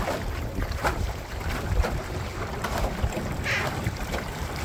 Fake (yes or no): yes